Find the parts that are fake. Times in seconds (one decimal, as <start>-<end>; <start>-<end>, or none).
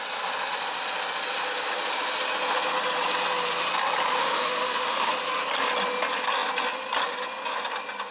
4.1-5.1